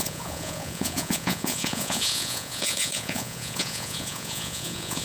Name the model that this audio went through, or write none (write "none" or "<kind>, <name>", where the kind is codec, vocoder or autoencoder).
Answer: vocoder, Vocos